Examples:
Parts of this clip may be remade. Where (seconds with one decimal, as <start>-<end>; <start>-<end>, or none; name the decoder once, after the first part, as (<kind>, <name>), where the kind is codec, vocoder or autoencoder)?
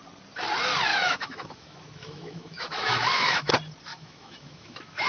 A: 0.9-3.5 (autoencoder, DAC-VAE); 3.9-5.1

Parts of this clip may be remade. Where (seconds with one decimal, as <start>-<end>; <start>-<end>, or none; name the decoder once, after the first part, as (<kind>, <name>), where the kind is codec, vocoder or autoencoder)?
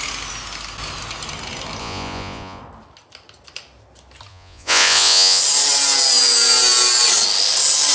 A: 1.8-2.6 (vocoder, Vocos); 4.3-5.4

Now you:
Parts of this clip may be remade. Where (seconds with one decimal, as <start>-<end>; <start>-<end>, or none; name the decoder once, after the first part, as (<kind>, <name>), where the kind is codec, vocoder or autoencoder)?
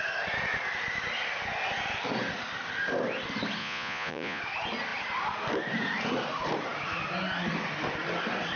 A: 3.6-4.4 (vocoder, Vocos)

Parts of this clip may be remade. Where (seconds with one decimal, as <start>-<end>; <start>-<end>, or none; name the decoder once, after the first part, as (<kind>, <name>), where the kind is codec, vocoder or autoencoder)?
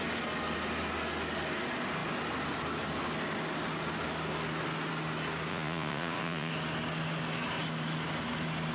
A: 5.5-6.5 (vocoder, Vocos)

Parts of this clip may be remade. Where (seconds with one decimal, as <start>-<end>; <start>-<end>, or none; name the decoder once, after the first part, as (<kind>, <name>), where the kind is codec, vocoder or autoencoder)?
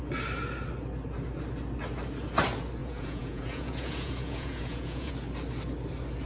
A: 2.8-5.1 (vocoder, Vocos)